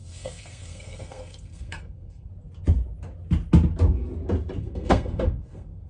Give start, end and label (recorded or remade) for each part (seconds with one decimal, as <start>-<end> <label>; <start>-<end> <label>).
0.0-2.3 remade; 2.3-4.6 recorded; 4.6-5.9 remade